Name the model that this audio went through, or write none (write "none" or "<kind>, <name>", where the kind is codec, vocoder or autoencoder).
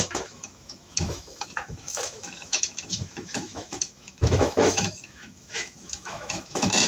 autoencoder, DAC-VAE